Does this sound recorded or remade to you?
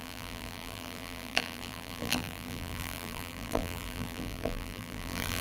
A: remade